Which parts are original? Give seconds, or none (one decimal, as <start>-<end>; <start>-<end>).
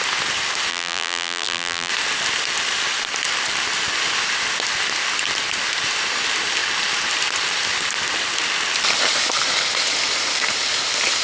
0.0-0.7; 1.9-11.2